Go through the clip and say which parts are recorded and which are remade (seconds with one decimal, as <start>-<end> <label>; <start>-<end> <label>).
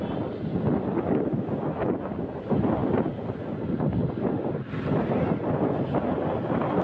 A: 0.0-2.8 recorded; 2.8-3.9 remade; 3.9-6.8 recorded